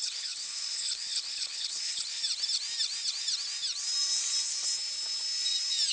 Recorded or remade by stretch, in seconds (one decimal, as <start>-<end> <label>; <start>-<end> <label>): 0.0-2.2 remade; 2.2-5.9 recorded